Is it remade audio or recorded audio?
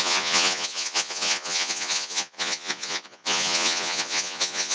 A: remade